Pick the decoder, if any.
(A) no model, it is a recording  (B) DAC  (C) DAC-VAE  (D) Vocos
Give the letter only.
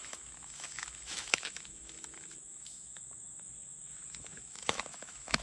C